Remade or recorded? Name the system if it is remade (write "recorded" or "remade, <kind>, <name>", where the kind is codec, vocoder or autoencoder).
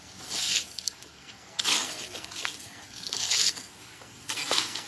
remade, codec, SNAC